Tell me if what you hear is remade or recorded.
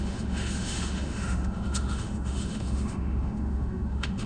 remade